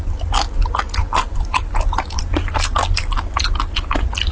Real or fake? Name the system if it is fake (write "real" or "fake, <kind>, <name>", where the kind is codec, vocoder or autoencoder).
real